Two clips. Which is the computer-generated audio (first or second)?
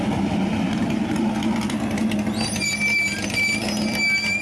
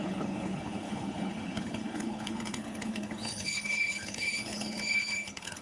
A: second